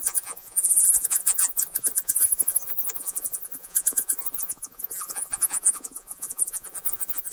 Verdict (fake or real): fake